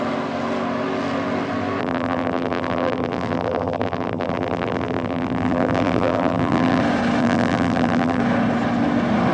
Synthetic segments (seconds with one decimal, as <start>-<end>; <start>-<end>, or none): 1.8-6.8; 7.2-8.2